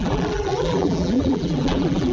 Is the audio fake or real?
fake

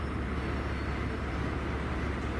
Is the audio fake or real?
real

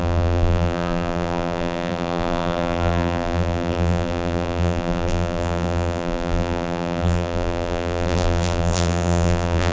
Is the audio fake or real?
fake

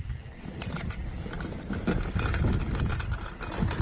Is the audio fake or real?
real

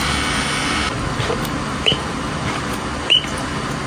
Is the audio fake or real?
fake